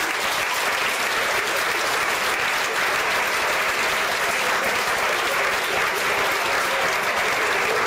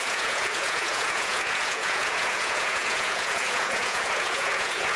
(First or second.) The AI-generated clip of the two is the second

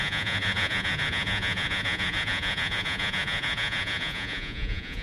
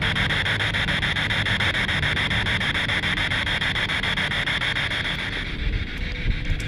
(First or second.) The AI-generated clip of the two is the first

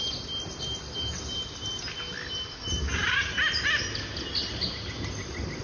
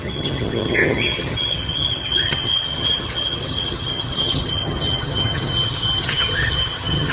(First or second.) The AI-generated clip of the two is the second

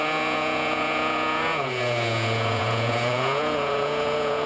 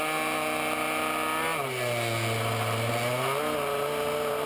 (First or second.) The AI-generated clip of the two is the first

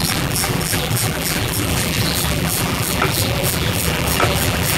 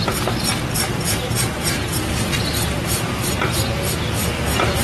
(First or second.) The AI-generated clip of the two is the first